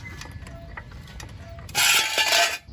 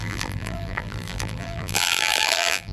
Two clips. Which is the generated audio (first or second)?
second